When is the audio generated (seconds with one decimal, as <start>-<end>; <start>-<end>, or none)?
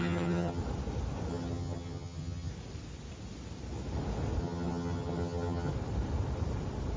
0.0-0.6; 1.3-2.5; 4.4-5.7